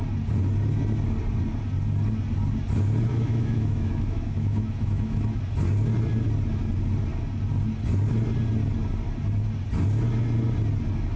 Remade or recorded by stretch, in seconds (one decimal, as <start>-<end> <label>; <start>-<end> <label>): 0.0-3.1 recorded; 3.1-5.4 remade; 5.4-11.2 recorded